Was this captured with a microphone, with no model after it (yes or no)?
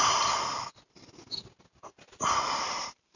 yes